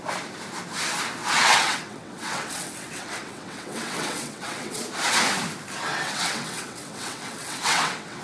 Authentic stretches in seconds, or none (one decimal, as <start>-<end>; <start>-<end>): 0.0-1.2; 4.8-5.9